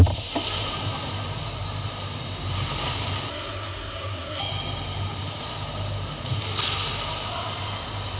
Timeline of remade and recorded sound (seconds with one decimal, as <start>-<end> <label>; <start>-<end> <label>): 0.0-3.3 recorded; 3.3-4.4 remade; 4.4-8.2 recorded